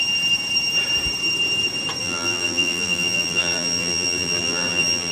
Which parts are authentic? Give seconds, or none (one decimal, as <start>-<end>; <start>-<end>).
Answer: 0.0-2.0